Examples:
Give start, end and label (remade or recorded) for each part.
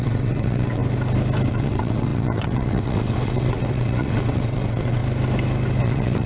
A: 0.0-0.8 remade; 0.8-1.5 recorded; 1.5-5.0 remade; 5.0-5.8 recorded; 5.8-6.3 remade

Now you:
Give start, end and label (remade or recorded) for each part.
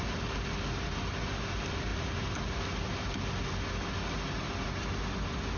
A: 0.0-5.6 recorded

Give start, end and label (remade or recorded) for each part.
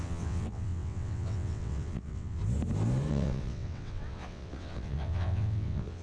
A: 0.0-2.4 remade; 2.4-3.1 recorded; 3.1-6.0 remade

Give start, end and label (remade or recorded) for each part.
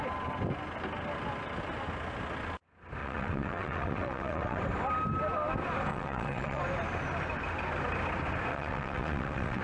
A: 0.0-3.0 recorded; 3.0-4.6 remade; 4.6-5.9 recorded; 5.9-6.6 remade; 6.6-8.5 recorded; 8.5-9.6 remade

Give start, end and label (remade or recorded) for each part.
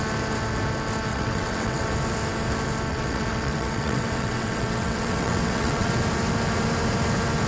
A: 0.0-1.1 recorded; 1.1-1.9 remade; 1.9-2.9 recorded; 2.9-5.9 remade; 5.9-7.5 recorded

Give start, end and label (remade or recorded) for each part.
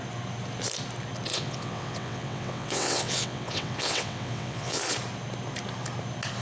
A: 0.0-1.3 recorded; 1.3-4.8 remade; 4.8-6.4 recorded